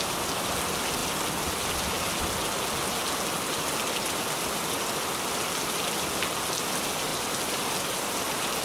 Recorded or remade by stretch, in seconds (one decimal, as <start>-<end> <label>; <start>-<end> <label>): 0.0-8.6 recorded